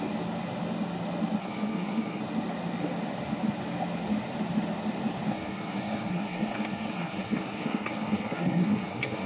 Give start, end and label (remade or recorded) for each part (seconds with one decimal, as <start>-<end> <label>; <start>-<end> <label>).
0.0-1.4 recorded; 1.4-2.2 remade; 2.2-5.3 recorded; 5.3-9.3 remade